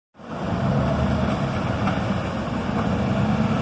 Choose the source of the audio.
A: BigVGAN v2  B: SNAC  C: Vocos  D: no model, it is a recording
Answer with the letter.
D